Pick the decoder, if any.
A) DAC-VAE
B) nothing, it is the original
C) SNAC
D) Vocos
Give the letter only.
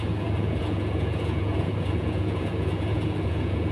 D